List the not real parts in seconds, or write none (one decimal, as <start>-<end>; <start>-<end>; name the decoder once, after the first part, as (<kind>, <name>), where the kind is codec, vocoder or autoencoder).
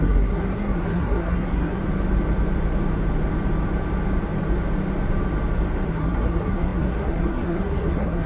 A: 0.0-1.8 (codec, SNAC); 5.9-8.3